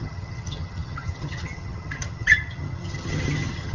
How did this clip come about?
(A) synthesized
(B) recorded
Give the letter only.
A